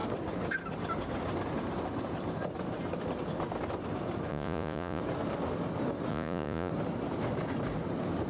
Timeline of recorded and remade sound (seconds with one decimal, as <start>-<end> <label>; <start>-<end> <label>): 0.0-4.3 recorded; 4.3-5.0 remade; 5.0-6.1 recorded; 6.1-6.7 remade; 6.7-8.3 recorded